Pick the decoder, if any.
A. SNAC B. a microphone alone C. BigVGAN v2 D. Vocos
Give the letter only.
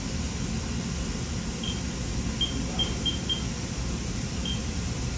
B